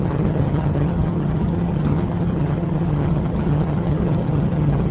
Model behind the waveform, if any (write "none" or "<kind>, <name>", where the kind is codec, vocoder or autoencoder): vocoder, HiFi-GAN